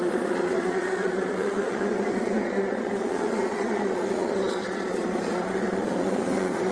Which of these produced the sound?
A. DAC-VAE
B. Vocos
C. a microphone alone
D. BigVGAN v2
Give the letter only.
B